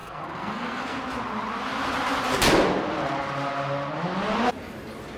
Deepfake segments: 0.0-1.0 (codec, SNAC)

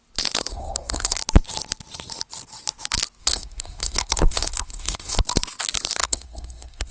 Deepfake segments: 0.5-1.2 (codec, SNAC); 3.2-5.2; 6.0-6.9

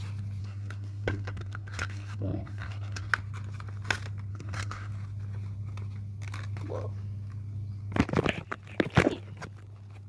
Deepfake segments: 0.4-3.1 (codec, SNAC); 4.3-4.9